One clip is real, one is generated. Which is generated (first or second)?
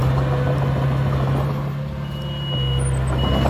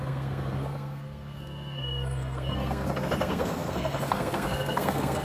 second